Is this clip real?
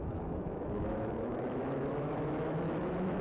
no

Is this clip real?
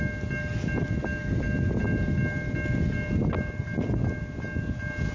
yes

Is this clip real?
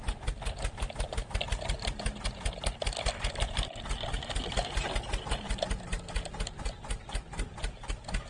yes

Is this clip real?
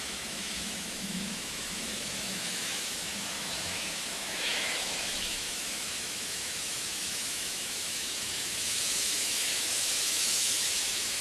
no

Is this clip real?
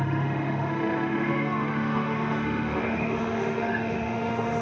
no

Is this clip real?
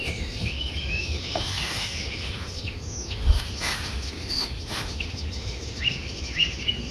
no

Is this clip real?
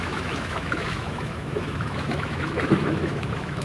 no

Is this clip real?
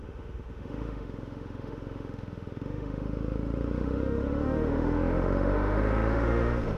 no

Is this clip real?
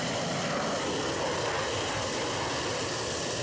yes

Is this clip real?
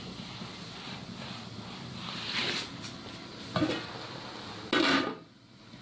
yes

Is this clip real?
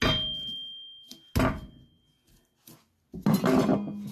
yes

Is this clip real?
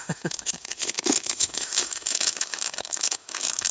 no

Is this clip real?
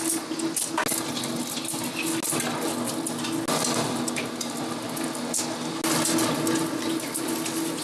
yes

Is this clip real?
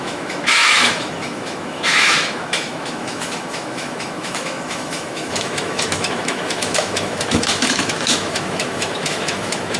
no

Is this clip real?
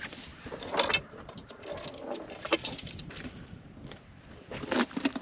yes